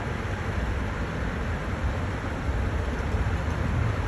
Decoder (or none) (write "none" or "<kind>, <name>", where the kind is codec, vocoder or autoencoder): vocoder, BigVGAN v2